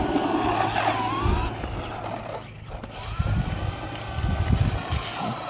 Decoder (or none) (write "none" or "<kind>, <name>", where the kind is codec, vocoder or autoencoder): none